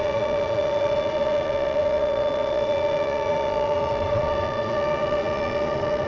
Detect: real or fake fake